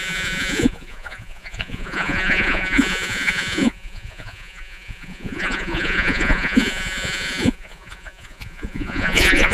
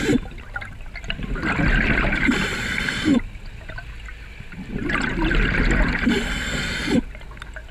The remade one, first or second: first